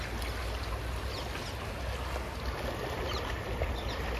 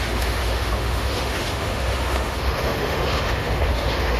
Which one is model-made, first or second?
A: second